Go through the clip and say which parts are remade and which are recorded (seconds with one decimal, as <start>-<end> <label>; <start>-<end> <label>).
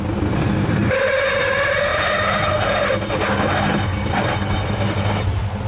0.0-0.8 recorded; 0.8-1.4 remade; 1.4-5.7 recorded